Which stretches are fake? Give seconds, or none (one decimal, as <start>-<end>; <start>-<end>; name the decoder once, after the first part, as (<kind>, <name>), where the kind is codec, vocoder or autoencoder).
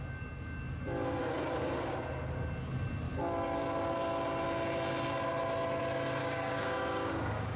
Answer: 1.4-2.0 (codec, DAC); 6.2-7.6